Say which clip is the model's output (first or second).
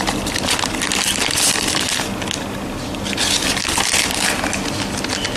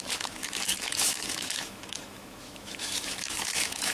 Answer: second